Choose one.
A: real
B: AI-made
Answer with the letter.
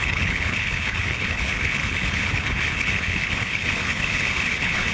B